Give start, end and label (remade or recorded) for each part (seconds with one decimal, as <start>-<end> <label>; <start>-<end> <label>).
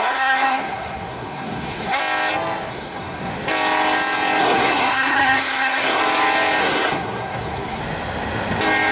0.0-2.0 remade; 2.0-2.7 recorded; 2.7-3.3 remade; 3.3-4.4 recorded; 4.4-6.0 remade; 6.0-6.6 recorded; 6.6-7.8 remade; 7.8-8.9 recorded